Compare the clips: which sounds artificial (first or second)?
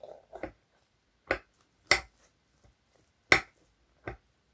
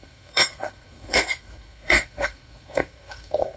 second